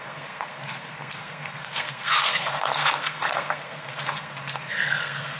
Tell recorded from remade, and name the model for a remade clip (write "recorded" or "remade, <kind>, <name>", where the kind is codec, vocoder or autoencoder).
remade, codec, SNAC